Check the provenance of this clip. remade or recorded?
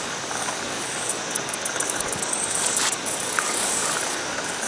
remade